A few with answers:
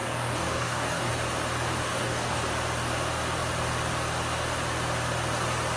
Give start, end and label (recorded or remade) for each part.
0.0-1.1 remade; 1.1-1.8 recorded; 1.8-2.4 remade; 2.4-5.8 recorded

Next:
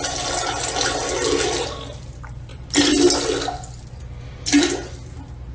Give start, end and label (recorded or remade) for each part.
0.0-5.5 recorded

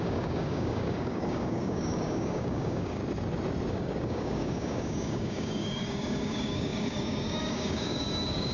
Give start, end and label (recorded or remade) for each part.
0.0-3.0 remade; 3.0-3.7 recorded; 3.7-8.5 remade

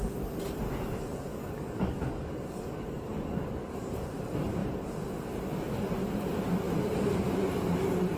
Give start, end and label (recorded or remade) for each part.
0.0-1.3 recorded; 1.3-4.1 remade; 4.1-8.2 recorded

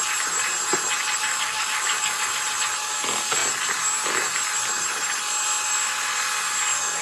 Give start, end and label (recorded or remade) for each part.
0.0-1.3 recorded; 1.3-2.4 remade; 2.4-7.0 recorded

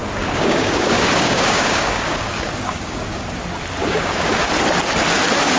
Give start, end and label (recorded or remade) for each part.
0.0-3.2 remade; 3.2-3.8 recorded; 3.8-4.5 remade; 4.5-5.6 recorded

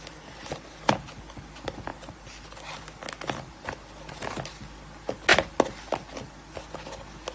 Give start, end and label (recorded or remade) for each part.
0.0-7.3 recorded